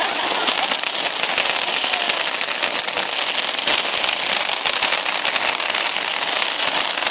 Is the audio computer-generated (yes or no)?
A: no